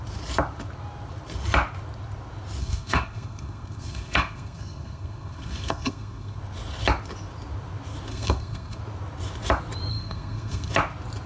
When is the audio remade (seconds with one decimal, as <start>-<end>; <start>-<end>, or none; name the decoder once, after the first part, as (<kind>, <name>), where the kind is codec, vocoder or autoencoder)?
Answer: 2.6-6.4 (codec, SNAC); 8.1-8.8; 9.9-10.7